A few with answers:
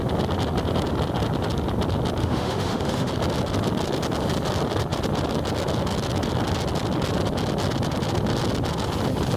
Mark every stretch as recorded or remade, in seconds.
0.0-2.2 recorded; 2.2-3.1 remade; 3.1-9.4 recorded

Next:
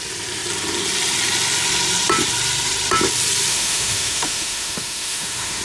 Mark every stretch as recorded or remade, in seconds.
0.0-3.5 recorded; 3.5-5.6 remade

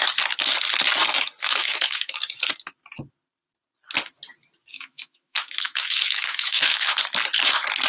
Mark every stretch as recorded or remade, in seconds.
0.0-1.4 recorded; 1.4-2.2 remade; 2.2-4.7 recorded; 4.7-7.0 remade; 7.0-7.9 recorded